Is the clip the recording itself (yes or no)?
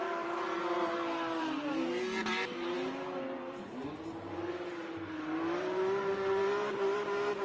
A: no